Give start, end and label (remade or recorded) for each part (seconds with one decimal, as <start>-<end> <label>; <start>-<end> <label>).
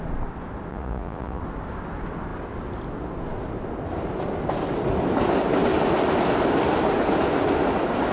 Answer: 0.0-0.7 recorded; 0.7-1.4 remade; 1.4-8.1 recorded